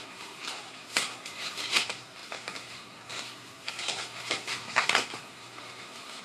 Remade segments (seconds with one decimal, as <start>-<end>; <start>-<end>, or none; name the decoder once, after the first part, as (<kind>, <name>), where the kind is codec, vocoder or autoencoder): 0.0-6.2 (codec, SNAC)